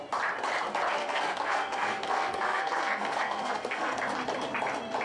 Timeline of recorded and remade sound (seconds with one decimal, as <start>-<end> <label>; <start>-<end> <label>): 0.0-1.0 recorded; 1.0-4.0 remade; 4.0-5.0 recorded